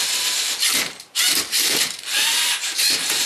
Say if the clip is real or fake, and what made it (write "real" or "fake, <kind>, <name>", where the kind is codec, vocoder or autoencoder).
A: fake, vocoder, BigVGAN v2